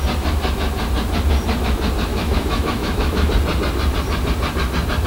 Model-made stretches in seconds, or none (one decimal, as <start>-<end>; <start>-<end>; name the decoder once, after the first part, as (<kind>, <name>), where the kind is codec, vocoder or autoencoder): 2.1-3.3 (autoencoder, DAC-VAE)